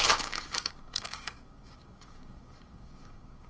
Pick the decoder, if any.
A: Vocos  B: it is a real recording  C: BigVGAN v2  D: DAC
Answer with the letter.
D